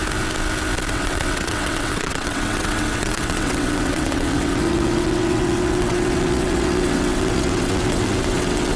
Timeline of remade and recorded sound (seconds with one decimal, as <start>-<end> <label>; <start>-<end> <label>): 0.0-0.9 recorded; 0.9-8.8 remade